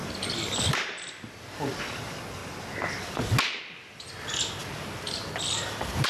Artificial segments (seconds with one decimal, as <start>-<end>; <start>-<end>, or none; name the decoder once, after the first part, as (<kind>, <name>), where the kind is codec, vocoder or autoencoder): 0.7-2.4 (vocoder, BigVGAN v2); 3.6-6.1